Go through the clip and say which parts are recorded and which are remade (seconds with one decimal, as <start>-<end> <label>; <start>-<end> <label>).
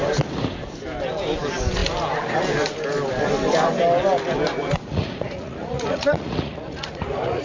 0.0-4.5 recorded; 4.5-7.4 remade